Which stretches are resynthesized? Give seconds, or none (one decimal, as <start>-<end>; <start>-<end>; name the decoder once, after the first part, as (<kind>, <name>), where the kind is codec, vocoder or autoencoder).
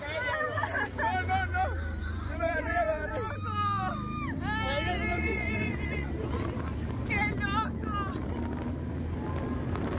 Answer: 2.0-3.1 (vocoder, Vocos); 5.1-6.1